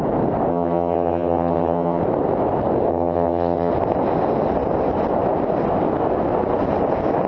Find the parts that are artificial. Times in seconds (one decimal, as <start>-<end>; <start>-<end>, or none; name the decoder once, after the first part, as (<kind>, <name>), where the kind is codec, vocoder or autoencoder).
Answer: 0.5-2.0 (vocoder, HiFi-GAN); 2.9-3.7